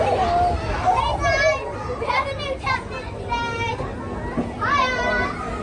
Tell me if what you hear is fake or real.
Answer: real